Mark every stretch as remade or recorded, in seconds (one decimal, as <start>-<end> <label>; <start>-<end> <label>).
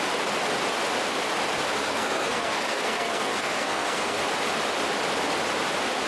0.0-1.8 recorded; 1.8-4.2 remade; 4.2-6.1 recorded